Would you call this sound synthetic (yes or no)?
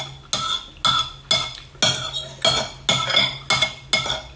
no